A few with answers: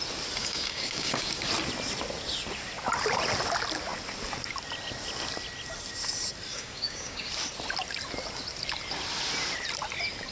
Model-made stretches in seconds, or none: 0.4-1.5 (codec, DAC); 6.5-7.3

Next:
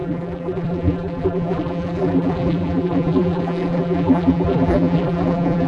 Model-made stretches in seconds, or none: 0.0-5.7 (vocoder, BigVGAN v2)

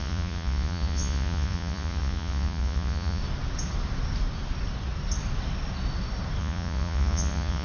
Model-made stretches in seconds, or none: 0.0-3.2 (vocoder, Vocos); 6.4-7.6

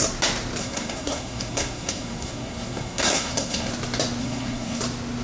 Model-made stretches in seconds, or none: 0.6-3.7 (codec, SNAC); 4.2-4.8

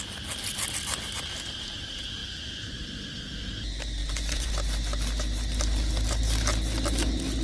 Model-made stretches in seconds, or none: 2.2-2.8 (vocoder, Vocos); 4.0-4.5

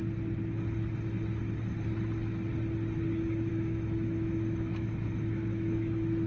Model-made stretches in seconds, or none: 3.5-6.3 (autoencoder, DAC-VAE)

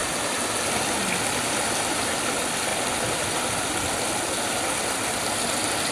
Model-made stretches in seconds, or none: none